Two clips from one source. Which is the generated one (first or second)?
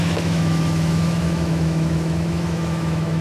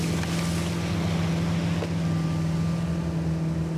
first